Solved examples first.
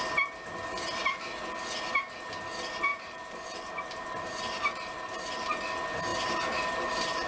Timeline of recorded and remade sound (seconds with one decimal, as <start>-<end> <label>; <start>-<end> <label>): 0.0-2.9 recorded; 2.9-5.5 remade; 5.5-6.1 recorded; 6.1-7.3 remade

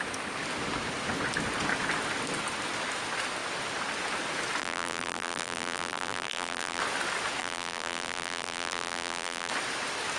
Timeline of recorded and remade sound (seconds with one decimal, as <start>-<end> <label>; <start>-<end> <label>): 0.0-4.6 recorded; 4.6-6.8 remade; 6.8-7.4 recorded; 7.4-9.5 remade; 9.5-10.2 recorded

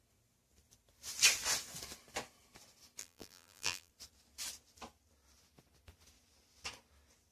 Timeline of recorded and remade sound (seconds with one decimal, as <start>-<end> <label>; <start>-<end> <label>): 0.0-3.0 recorded; 3.0-3.9 remade; 3.9-7.3 recorded

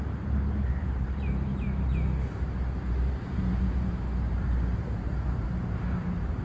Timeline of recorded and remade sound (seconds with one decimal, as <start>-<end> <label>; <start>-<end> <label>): 0.0-1.5 remade; 1.5-2.9 recorded; 2.9-6.4 remade

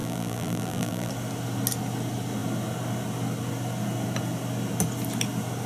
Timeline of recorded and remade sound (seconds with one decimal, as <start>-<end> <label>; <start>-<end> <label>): 0.0-1.1 remade; 1.1-5.7 recorded

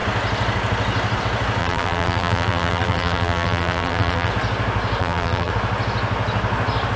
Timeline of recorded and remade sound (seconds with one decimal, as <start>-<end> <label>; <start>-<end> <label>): 0.0-1.6 recorded; 1.6-4.3 remade; 4.3-5.0 recorded; 5.0-5.5 remade; 5.5-7.0 recorded

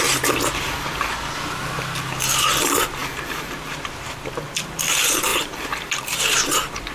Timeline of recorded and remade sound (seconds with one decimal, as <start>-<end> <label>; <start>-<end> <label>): 0.0-3.0 recorded; 3.0-4.3 remade; 4.3-5.3 recorded; 5.3-6.2 remade; 6.2-6.9 recorded

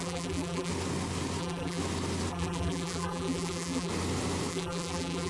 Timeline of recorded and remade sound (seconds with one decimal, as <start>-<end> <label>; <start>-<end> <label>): 0.0-0.7 remade; 0.7-1.4 recorded; 1.4-1.8 remade; 1.8-2.3 recorded; 2.3-3.9 remade; 3.9-4.5 recorded; 4.5-5.3 remade